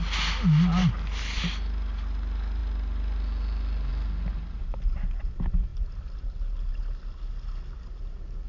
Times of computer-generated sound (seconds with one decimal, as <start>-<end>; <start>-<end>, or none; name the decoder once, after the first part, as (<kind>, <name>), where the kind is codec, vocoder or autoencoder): none